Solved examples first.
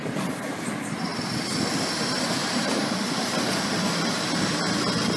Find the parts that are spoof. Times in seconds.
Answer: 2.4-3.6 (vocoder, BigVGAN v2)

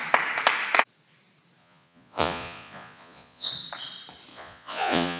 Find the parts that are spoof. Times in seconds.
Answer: 1.6-3.5 (vocoder, Vocos); 4.3-5.2

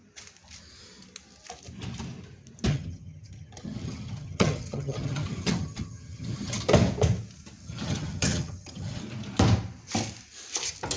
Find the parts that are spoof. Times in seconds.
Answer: 2.7-6.6 (vocoder, HiFi-GAN); 7.6-9.0

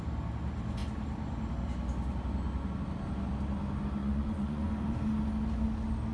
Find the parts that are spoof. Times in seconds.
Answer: 4.0-5.0 (vocoder, Vocos)

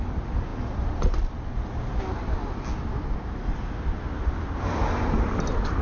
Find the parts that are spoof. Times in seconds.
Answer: none

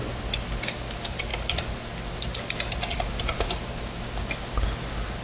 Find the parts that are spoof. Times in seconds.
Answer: none

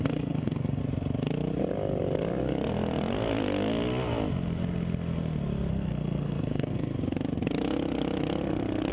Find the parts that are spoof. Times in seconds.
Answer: 0.0-0.8 (codec, SNAC); 5.7-6.9